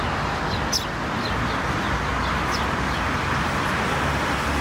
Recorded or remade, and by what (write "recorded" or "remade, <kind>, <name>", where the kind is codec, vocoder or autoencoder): recorded